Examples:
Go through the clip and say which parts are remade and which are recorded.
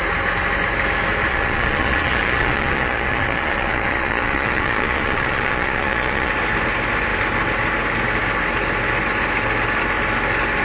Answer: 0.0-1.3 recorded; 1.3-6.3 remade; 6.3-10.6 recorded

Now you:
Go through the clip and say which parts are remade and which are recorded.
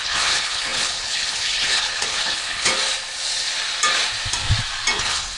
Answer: 0.0-2.7 remade; 2.7-5.0 recorded; 5.0-5.4 remade